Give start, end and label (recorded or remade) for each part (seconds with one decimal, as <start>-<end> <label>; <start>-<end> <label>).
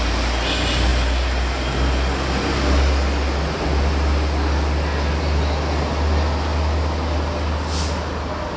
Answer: 0.0-8.6 recorded